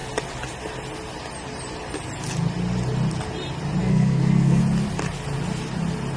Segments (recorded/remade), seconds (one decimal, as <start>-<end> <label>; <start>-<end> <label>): 0.0-3.8 recorded; 3.8-4.6 remade; 4.6-6.2 recorded